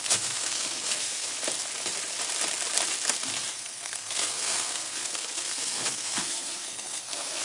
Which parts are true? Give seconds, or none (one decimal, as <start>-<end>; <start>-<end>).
1.3-3.5